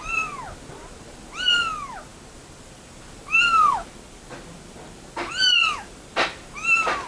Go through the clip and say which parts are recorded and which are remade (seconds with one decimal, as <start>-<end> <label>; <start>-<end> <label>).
0.0-7.1 recorded